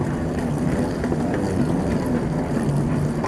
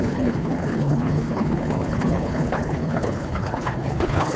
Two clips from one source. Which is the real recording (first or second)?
first